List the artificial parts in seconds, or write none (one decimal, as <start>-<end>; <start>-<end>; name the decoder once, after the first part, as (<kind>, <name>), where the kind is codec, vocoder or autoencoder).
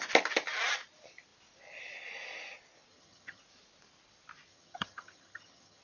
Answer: 2.9-3.4 (vocoder, HiFi-GAN); 4.5-5.8